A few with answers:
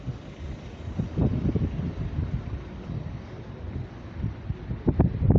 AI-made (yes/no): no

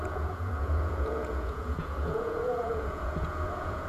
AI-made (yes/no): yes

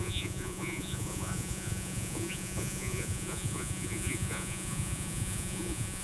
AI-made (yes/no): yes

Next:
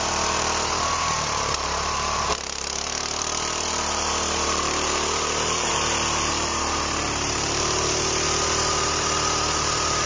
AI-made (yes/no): yes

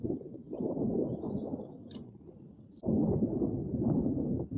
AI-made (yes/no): no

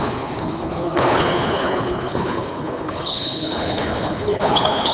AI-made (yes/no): yes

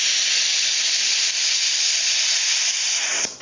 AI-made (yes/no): no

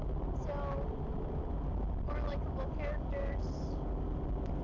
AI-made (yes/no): no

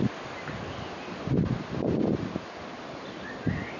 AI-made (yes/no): no